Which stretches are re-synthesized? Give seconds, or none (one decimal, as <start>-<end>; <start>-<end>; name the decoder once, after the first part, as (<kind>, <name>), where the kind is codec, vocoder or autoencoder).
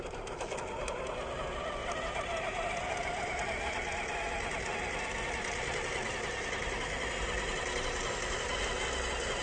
1.8-2.7 (vocoder, BigVGAN v2)